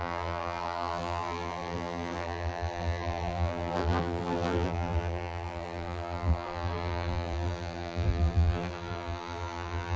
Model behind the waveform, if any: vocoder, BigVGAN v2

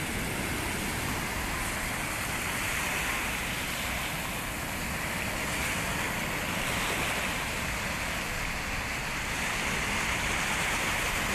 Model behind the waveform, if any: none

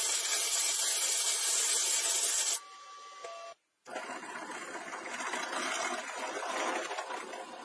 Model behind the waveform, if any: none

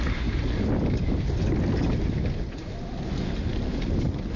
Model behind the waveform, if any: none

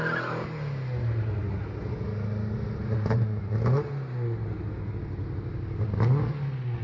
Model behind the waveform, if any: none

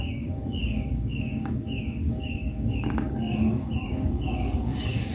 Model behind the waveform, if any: codec, DAC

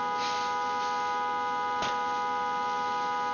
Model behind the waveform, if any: none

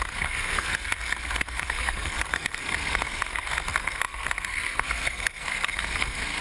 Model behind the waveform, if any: codec, SNAC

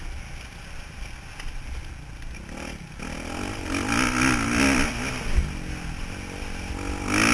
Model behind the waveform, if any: none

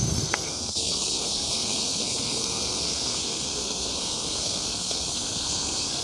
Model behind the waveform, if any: codec, SNAC